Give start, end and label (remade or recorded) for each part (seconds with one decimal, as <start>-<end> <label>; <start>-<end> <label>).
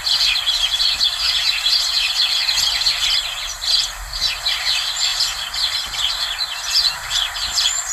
0.0-4.6 recorded; 4.6-7.9 remade